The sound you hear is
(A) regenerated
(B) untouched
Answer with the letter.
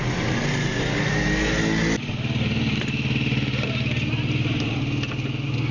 B